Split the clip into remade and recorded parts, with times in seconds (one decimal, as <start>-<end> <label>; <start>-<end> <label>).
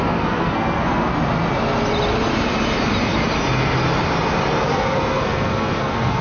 0.0-1.1 remade; 1.1-4.6 recorded; 4.6-6.2 remade